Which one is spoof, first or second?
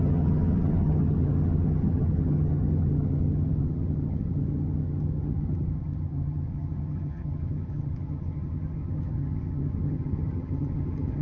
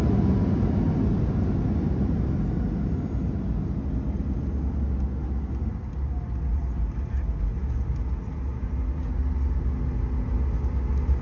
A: first